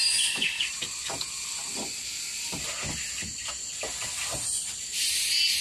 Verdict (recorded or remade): recorded